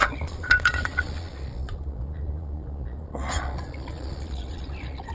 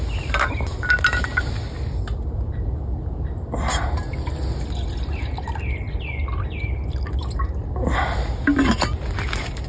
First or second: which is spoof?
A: first